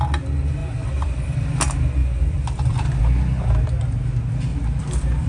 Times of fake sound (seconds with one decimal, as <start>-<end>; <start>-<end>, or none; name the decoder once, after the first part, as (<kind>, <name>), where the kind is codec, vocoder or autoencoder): 0.6-1.5 (vocoder, BigVGAN v2); 2.0-3.0; 4.5-5.3